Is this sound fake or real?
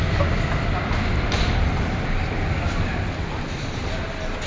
real